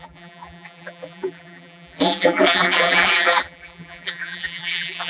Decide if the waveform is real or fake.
fake